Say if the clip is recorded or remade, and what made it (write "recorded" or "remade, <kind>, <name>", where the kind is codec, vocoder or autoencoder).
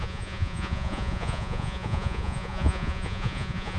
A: remade, vocoder, Vocos